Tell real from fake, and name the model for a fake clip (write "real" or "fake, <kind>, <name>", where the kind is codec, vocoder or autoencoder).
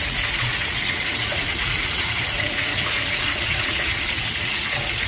fake, vocoder, Vocos